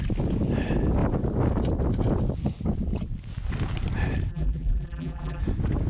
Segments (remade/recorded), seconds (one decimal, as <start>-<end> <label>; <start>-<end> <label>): 0.0-4.3 recorded; 4.3-5.4 remade; 5.4-5.9 recorded